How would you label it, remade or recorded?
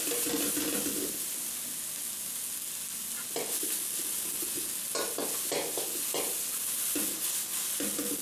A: recorded